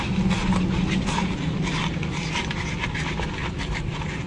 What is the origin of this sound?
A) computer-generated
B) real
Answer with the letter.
B